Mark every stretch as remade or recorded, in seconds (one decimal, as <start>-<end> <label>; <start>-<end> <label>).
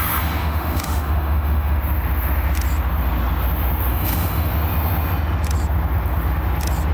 0.0-0.4 recorded; 0.4-1.8 remade; 1.8-3.9 recorded; 3.9-4.5 remade; 4.5-6.9 recorded